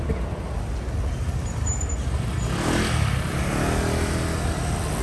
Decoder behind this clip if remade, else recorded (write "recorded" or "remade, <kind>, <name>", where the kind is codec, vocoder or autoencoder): recorded